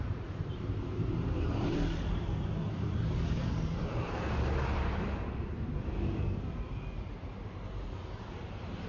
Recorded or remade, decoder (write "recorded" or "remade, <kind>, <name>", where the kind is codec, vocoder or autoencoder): remade, vocoder, BigVGAN v2